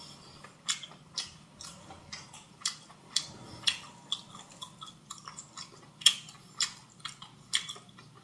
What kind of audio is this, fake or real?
real